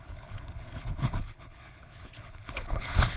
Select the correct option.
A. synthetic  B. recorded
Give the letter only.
A